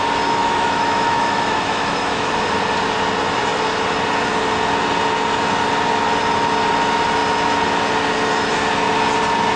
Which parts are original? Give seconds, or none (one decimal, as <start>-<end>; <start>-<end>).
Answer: 0.0-0.4; 2.3-9.6